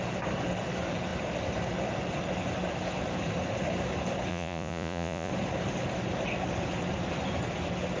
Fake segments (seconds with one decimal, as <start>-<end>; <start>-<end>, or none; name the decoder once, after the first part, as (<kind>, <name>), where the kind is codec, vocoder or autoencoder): 4.3-5.3 (vocoder, Vocos)